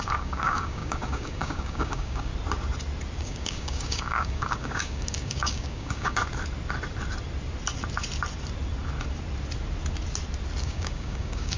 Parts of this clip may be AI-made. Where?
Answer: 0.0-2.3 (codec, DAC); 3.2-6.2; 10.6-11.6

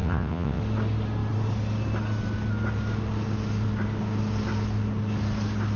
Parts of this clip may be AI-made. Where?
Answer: 0.0-0.6 (vocoder, WaveNeXt)